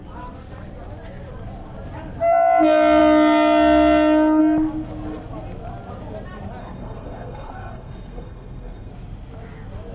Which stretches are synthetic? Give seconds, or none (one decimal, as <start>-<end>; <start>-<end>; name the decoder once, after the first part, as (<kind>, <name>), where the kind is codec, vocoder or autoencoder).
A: 6.6-8.9 (codec, SNAC)